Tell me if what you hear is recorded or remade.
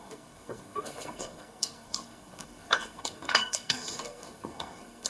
remade